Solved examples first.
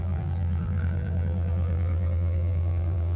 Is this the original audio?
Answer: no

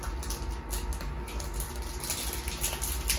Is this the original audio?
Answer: yes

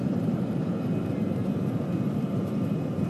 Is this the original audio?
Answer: no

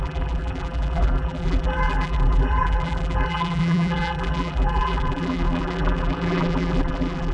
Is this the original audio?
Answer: no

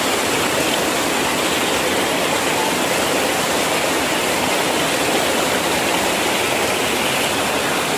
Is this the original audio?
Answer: yes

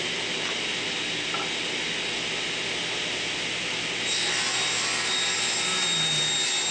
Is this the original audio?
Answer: yes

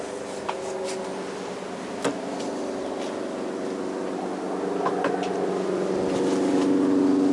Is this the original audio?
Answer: yes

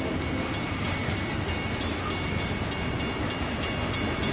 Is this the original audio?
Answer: yes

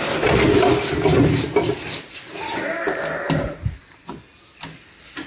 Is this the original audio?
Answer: yes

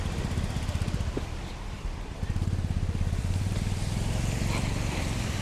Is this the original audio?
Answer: no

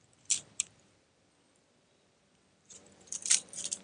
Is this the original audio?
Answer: no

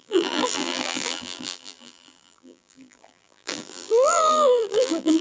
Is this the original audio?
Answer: no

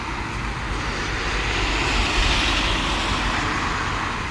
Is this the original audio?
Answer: yes